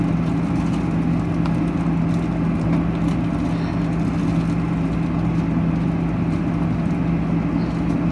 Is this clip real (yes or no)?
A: yes